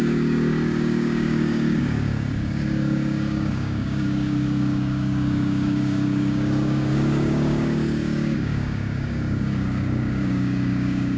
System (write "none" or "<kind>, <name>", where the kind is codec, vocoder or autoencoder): codec, DAC